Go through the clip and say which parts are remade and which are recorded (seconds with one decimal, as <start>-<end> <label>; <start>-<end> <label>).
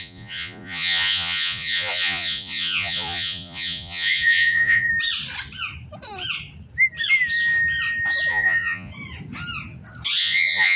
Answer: 0.0-4.9 remade; 4.9-8.3 recorded; 8.3-8.9 remade; 8.9-10.2 recorded; 10.2-10.8 remade